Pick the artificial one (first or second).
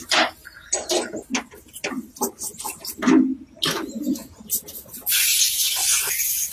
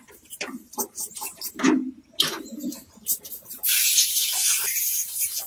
second